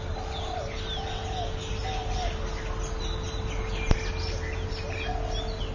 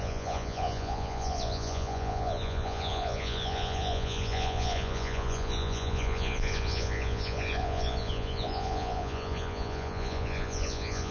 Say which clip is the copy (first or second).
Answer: second